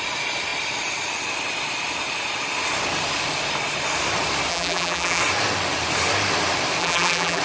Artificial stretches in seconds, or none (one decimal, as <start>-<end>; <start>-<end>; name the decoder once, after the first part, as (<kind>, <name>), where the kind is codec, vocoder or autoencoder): 4.5-5.2 (vocoder, BigVGAN v2); 6.8-7.4